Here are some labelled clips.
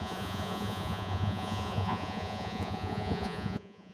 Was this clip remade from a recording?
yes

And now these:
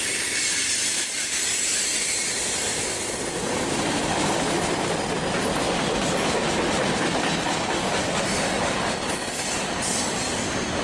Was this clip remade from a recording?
no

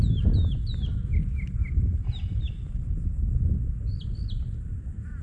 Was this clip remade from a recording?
no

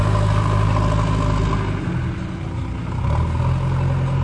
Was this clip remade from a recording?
no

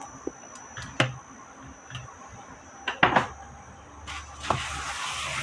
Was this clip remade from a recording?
no